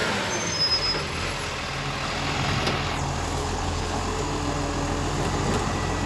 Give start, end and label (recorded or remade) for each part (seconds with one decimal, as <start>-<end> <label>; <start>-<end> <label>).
0.0-3.4 recorded; 3.4-4.0 remade; 4.0-6.1 recorded